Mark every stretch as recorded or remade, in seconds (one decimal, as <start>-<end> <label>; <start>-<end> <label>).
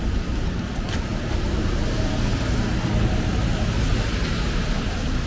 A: 0.0-5.3 recorded